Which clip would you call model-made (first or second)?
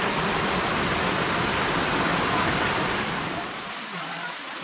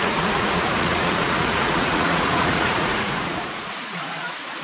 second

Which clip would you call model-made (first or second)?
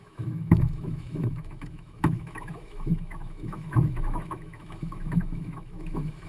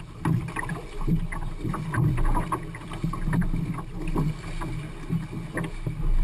first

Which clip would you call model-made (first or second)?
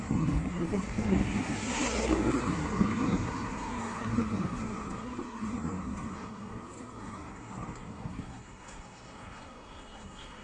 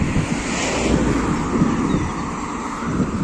first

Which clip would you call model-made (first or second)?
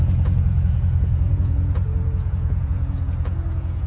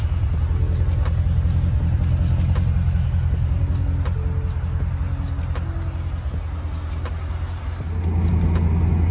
first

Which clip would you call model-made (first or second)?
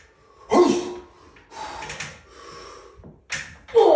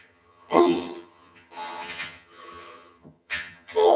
second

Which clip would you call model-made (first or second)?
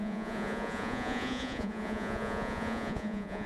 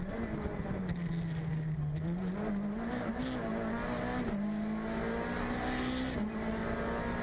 first